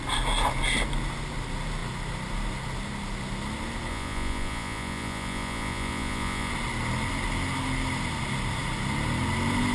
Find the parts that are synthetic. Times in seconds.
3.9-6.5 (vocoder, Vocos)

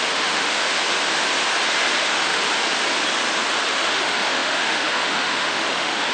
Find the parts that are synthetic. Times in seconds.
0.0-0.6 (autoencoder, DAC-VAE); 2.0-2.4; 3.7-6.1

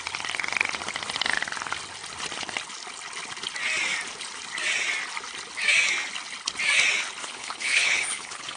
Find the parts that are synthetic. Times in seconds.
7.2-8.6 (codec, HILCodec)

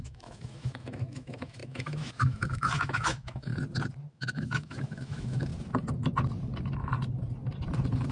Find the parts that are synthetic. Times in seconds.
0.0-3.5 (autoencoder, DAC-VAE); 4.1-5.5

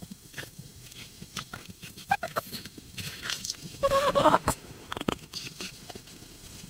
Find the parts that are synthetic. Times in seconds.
0.0-6.7 (autoencoder, DAC-VAE)

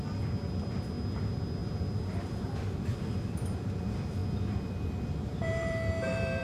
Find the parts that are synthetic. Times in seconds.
5.5-6.4 (vocoder, BigVGAN v2)

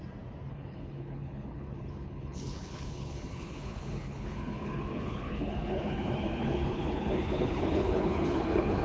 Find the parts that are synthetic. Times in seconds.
0.5-8.8 (codec, HILCodec)

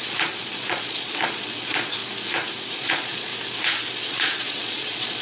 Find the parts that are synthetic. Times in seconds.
0.0-2.0 (vocoder, Vocos); 2.7-3.3; 3.9-5.2